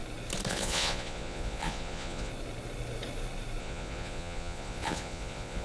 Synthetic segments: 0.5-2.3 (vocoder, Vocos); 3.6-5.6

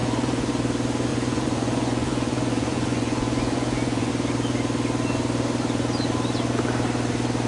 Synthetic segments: 0.0-0.5 (vocoder, Vocos); 1.1-4.1

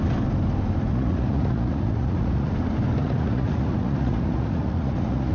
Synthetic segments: 0.9-2.5 (vocoder, Vocos); 3.0-5.3

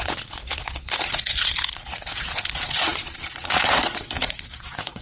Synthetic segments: 0.0-5.0 (vocoder, Vocos)

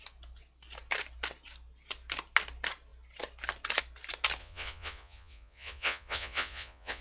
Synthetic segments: 4.4-7.0 (vocoder, Vocos)